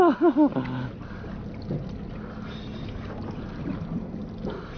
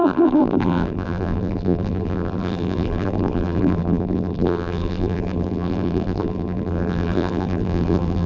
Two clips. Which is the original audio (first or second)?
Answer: first